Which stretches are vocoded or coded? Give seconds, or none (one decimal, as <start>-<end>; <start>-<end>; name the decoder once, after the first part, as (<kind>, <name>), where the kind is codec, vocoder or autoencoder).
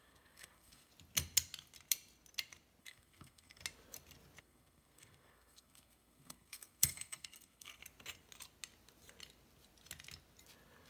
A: 0.0-0.9 (codec, SNAC); 2.8-3.6; 4.4-7.8